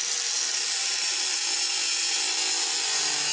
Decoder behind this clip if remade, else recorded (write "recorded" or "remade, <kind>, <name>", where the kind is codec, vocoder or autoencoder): recorded